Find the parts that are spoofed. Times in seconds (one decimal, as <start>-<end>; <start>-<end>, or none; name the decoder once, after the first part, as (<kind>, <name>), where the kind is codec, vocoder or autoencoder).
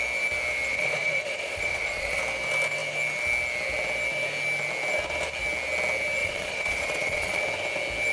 0.7-2.2 (vocoder, Vocos); 6.2-7.4